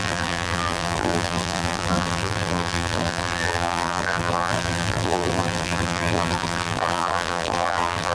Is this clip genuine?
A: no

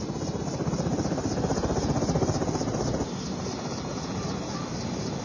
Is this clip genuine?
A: yes